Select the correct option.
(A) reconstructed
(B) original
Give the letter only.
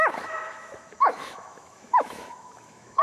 A